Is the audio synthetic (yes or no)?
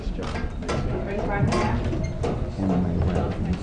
no